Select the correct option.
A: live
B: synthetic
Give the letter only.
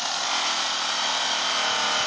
A